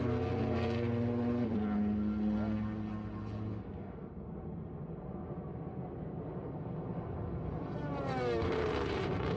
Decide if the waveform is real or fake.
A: real